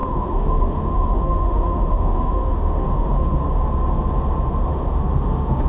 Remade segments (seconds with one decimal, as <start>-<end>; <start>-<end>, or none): 0.0-3.4; 4.7-5.7